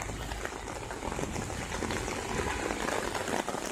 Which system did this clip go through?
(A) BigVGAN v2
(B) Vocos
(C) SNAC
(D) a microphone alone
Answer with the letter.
D